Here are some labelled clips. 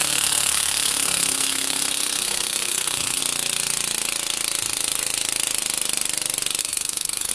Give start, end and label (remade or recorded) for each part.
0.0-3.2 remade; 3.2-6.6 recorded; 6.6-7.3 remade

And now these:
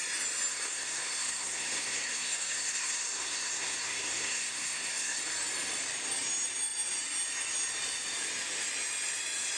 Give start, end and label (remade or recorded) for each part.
0.0-0.5 recorded; 0.5-5.2 remade; 5.2-9.6 recorded

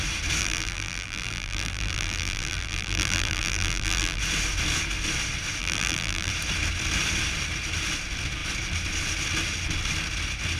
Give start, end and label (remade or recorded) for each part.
0.0-0.4 recorded; 0.4-4.2 remade; 4.2-5.6 recorded; 5.6-6.3 remade; 6.3-10.6 recorded

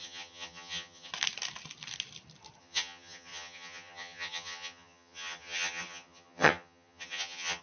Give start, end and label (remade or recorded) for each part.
0.0-1.1 remade; 1.1-2.6 recorded; 2.6-7.6 remade